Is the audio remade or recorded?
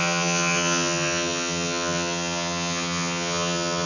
remade